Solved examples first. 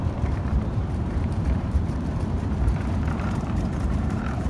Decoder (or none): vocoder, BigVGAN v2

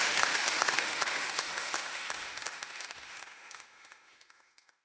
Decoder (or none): autoencoder, DAC-VAE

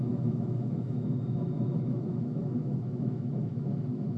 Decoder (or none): autoencoder, DAC-VAE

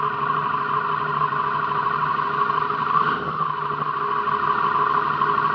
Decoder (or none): none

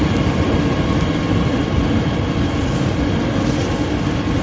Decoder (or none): none